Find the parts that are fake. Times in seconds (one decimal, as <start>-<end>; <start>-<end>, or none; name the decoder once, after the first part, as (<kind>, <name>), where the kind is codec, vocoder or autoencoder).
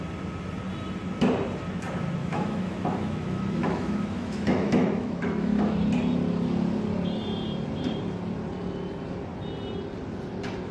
2.2-5.7 (autoencoder, DAC-VAE)